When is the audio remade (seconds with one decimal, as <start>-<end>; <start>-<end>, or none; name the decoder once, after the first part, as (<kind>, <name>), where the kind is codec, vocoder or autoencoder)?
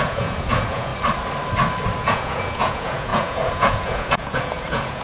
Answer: 0.0-0.9 (vocoder, Vocos); 2.0-5.0